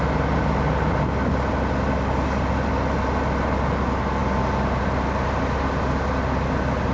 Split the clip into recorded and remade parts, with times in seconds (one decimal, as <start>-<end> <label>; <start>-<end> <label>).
0.0-6.9 recorded